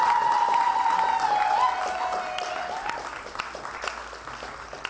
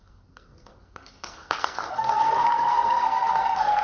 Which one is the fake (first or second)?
second